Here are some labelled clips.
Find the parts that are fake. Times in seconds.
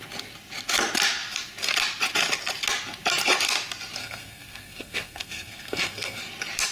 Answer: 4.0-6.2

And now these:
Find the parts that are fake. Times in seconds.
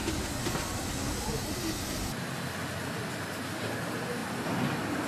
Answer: none